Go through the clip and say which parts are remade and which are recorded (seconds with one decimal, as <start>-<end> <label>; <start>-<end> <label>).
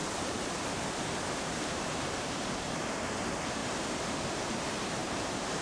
0.0-1.4 recorded; 1.4-3.6 remade; 3.6-4.3 recorded; 4.3-5.6 remade